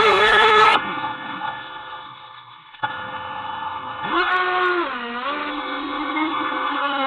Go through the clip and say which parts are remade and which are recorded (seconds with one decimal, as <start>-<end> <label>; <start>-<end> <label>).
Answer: 0.0-4.3 remade; 4.3-5.5 recorded; 5.5-7.1 remade